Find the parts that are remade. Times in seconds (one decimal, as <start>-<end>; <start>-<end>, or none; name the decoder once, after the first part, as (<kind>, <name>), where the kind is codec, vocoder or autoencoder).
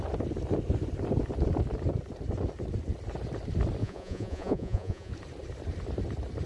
3.8-5.1 (vocoder, Vocos)